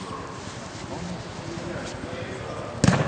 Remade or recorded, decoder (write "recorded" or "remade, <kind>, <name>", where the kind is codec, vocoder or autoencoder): recorded